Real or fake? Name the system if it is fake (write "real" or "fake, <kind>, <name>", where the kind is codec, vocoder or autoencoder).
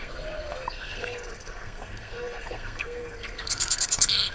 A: fake, codec, SNAC